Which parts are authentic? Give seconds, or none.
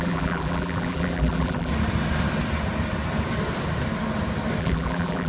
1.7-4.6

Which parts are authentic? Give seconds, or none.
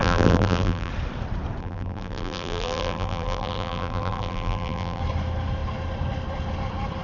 0.9-1.6; 5.0-7.0